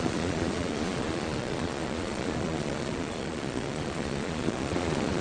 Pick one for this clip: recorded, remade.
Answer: remade